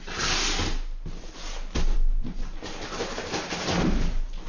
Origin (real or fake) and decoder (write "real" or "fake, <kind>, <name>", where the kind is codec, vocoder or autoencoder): real